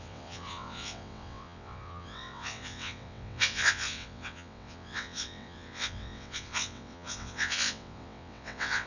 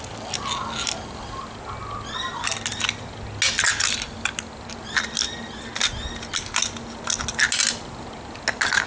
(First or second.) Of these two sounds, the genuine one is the second